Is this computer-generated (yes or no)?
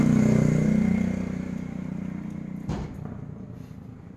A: no